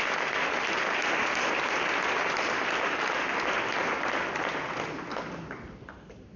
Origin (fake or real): real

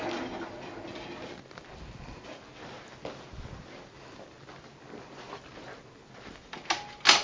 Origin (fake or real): real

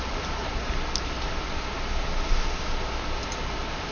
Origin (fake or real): real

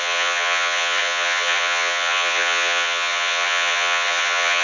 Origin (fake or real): fake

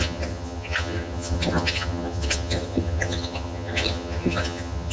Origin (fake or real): fake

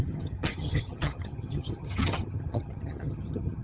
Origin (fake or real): fake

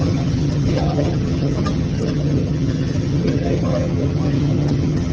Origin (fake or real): fake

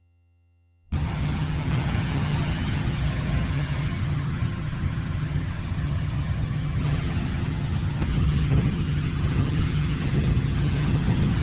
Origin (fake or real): fake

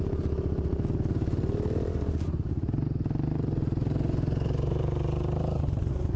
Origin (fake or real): real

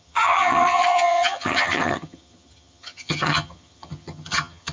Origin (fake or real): fake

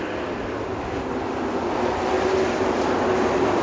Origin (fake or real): real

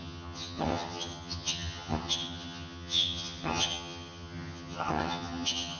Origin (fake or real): fake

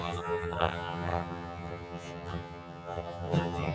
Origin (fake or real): fake